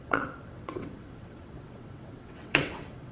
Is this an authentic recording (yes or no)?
no